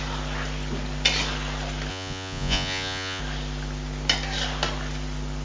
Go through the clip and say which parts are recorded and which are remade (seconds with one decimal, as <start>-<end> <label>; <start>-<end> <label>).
0.0-1.9 recorded; 1.9-3.2 remade; 3.2-5.4 recorded